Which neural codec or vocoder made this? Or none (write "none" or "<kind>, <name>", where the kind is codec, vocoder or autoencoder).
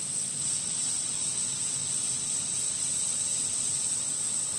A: none